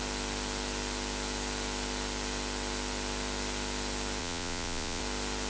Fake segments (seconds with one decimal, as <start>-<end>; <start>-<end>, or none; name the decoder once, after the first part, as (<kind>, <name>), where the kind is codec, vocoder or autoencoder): 4.2-5.0 (vocoder, Vocos)